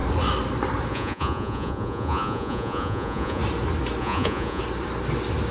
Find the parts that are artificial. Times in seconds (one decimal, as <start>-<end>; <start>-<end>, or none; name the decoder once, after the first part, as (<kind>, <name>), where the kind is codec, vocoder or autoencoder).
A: 0.9-3.4 (vocoder, Vocos); 4.0-4.6